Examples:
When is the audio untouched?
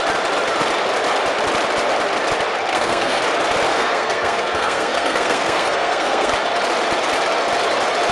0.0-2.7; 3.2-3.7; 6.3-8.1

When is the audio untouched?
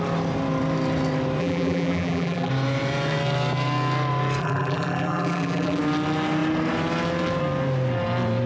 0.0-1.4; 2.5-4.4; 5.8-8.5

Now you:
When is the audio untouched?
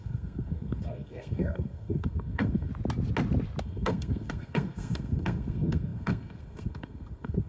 2.7-3.6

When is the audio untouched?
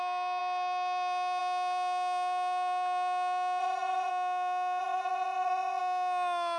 0.0-3.6; 4.1-4.8; 5.8-6.6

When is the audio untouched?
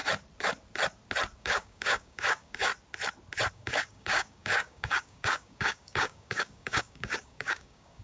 0.0-1.4; 2.7-3.5